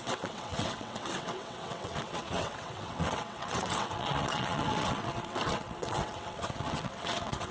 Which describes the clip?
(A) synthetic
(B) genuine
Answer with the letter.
A